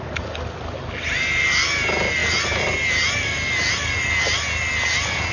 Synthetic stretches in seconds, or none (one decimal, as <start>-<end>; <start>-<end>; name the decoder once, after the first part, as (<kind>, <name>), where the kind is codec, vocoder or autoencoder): none